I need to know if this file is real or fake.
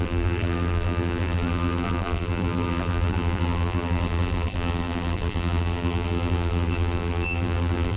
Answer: fake